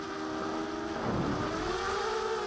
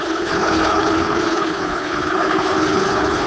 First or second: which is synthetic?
second